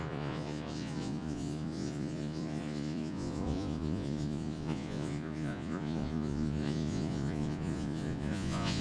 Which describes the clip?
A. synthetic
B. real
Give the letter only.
A